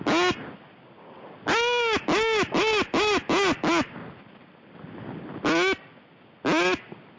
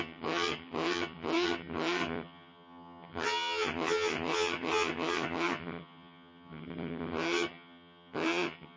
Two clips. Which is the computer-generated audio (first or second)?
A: second